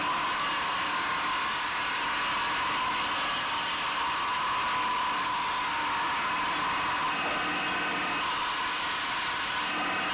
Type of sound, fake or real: real